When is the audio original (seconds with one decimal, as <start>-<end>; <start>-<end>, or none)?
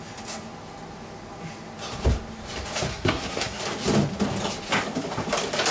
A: 0.0-2.9; 3.6-5.7